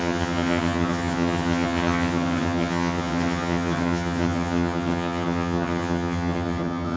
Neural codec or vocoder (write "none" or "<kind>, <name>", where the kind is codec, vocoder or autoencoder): vocoder, HiFi-GAN